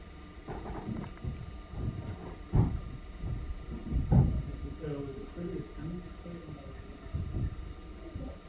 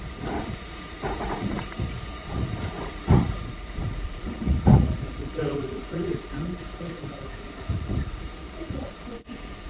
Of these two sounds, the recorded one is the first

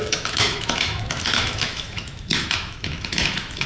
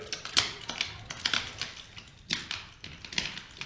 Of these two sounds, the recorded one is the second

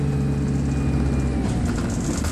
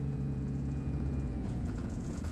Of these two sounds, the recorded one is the first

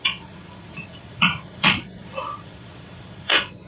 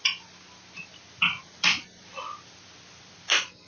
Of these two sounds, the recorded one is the second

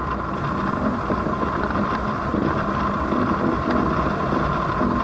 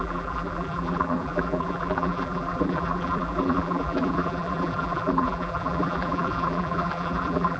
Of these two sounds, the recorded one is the first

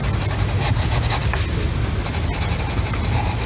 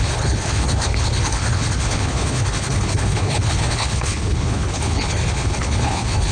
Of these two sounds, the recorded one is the first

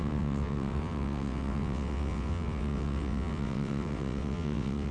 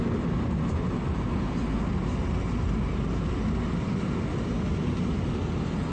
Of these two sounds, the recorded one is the second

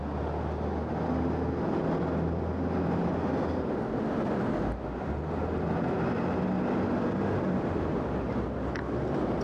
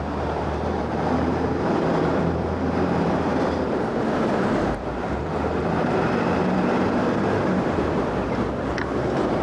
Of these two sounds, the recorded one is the first